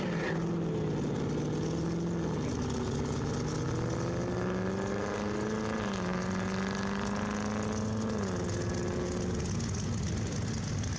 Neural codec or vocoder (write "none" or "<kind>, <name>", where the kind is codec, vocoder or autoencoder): none